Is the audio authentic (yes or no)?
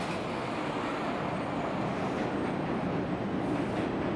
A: yes